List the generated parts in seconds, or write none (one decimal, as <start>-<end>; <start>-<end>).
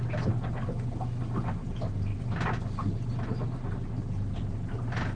none